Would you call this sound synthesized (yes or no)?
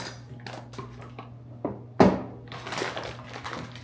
no